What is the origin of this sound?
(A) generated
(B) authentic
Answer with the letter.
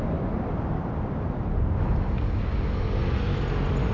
B